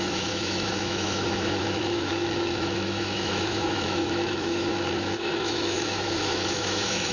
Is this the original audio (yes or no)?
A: no